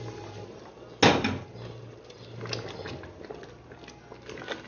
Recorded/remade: recorded